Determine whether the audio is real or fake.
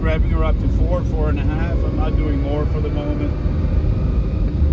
real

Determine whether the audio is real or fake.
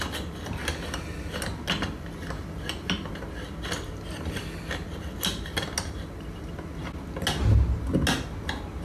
real